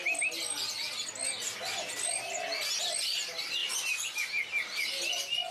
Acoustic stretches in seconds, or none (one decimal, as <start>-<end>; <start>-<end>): 0.0-5.5